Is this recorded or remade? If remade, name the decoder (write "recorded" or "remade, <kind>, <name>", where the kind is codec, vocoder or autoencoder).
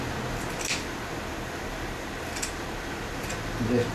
recorded